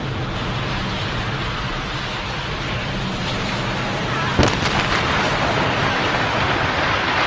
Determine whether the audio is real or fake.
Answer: real